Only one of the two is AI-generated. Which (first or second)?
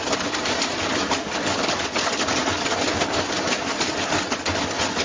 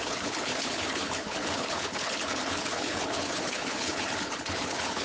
second